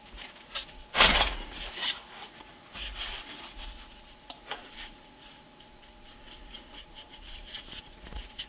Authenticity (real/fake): fake